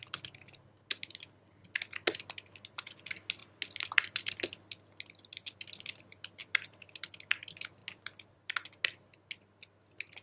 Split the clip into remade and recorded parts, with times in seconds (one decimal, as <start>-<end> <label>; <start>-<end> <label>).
0.0-3.4 recorded; 3.4-4.3 remade; 4.3-6.4 recorded; 6.4-7.1 remade; 7.1-7.8 recorded; 7.8-8.8 remade; 8.8-10.2 recorded

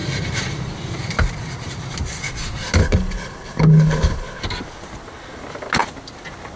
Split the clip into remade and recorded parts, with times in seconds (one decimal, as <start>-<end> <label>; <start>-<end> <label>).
0.0-2.8 recorded; 2.8-4.4 remade; 4.4-6.6 recorded

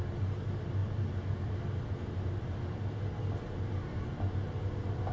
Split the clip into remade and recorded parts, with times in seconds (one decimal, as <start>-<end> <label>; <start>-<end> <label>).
0.0-5.1 recorded

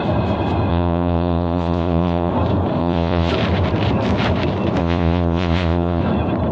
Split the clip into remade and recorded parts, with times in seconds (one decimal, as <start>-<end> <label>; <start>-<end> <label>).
0.0-0.7 recorded; 0.7-2.3 remade; 2.3-2.8 recorded; 2.8-3.3 remade; 3.3-4.8 recorded; 4.8-6.0 remade; 6.0-6.5 recorded

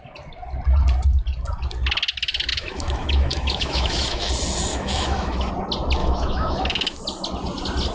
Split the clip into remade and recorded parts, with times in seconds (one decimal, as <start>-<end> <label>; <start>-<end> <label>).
0.0-2.5 recorded; 2.5-4.3 remade; 4.3-4.7 recorded; 4.7-5.5 remade; 5.5-6.0 recorded; 6.0-7.0 remade; 7.0-7.9 recorded